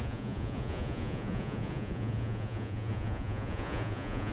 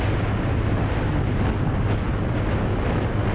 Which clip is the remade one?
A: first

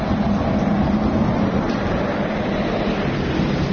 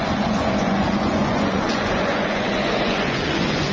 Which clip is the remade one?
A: second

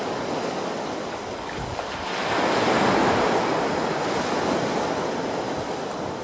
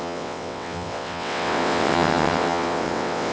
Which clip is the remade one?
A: second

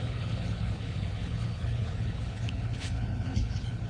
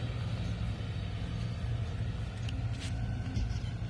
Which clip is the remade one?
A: first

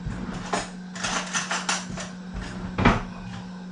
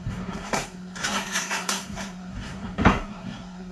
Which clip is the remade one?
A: second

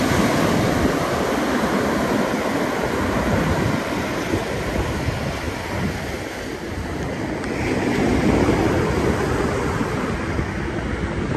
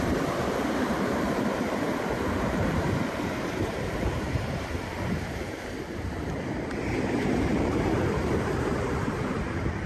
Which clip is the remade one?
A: second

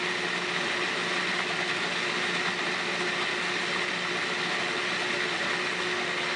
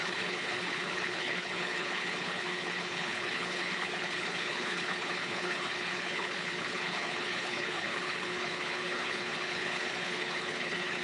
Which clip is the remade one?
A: second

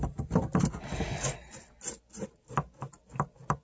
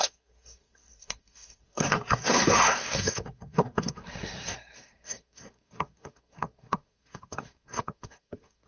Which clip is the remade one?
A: second